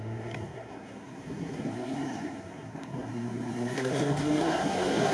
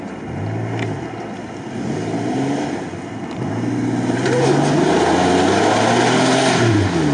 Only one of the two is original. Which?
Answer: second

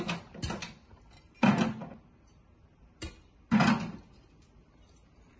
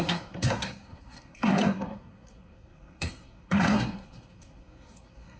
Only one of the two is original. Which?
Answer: first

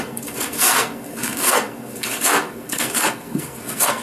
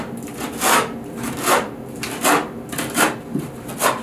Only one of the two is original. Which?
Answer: second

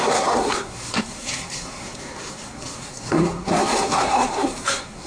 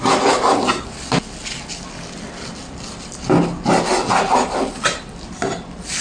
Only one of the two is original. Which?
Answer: second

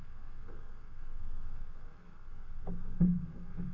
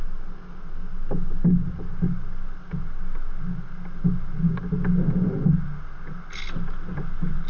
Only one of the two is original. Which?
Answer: second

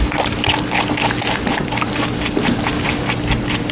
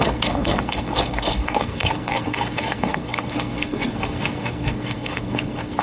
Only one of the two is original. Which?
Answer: first